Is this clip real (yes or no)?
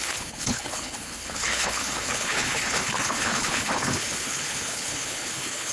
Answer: no